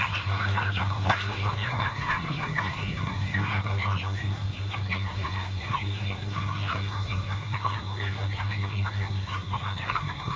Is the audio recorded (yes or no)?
no